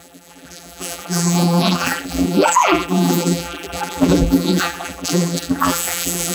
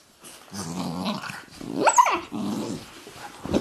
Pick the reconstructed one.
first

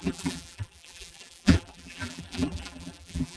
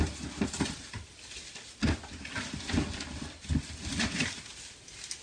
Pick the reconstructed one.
first